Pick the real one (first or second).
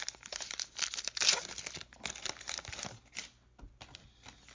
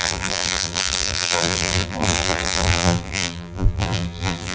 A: first